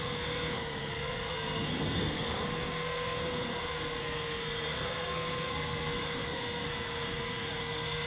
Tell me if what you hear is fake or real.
fake